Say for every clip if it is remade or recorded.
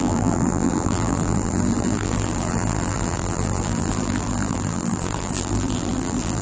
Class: remade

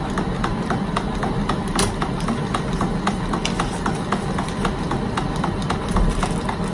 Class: recorded